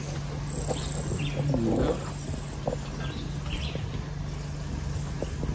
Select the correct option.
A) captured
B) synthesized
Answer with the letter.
A